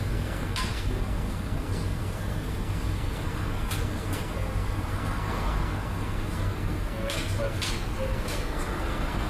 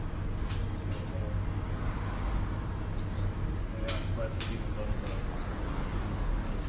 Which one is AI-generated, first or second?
first